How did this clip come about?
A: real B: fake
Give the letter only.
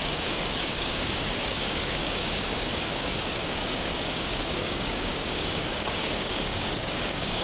B